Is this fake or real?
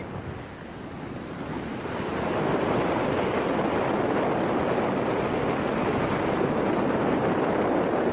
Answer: real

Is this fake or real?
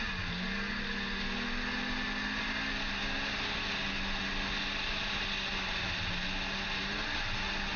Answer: real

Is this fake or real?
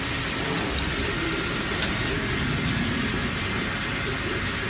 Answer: real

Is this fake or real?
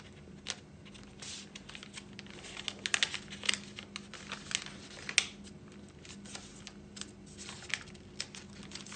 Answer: real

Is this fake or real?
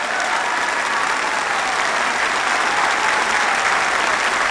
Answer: real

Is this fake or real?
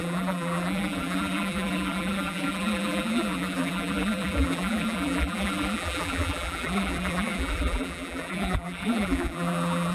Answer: fake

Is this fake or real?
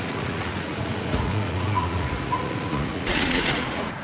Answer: fake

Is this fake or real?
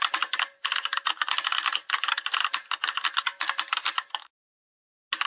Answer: real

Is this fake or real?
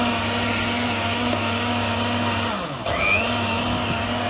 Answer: real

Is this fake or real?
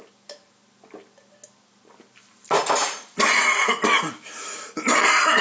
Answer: real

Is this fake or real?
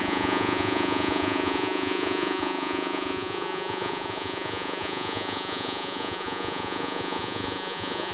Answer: fake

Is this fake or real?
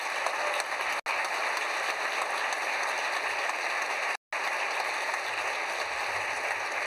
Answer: real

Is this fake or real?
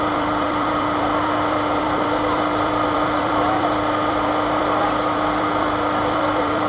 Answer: fake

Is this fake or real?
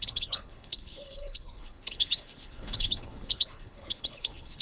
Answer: fake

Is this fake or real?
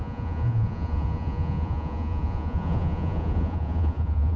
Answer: fake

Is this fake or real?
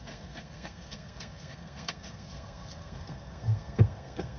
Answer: fake